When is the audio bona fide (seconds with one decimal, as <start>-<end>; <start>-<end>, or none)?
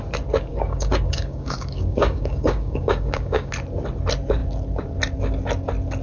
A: 0.0-0.5; 3.5-6.0